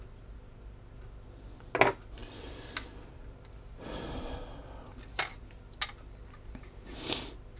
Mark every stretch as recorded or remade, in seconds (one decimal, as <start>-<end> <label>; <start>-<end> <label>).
0.0-2.2 recorded; 2.2-5.4 remade; 5.4-7.6 recorded